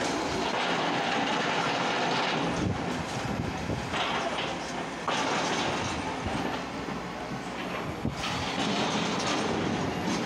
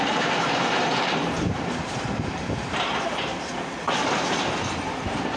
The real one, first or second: first